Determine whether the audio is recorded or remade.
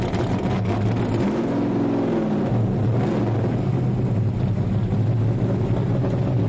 recorded